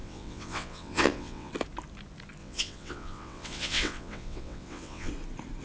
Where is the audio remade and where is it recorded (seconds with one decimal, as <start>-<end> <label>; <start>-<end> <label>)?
0.0-1.5 remade; 1.5-2.4 recorded; 2.4-5.1 remade; 5.1-5.6 recorded